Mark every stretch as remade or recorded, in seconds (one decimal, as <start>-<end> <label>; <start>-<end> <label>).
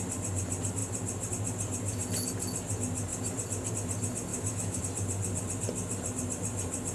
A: 0.0-4.3 recorded; 4.3-4.8 remade; 4.8-6.9 recorded